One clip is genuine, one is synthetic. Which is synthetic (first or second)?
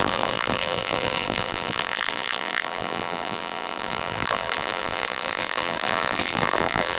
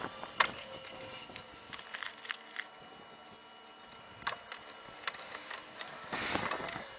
first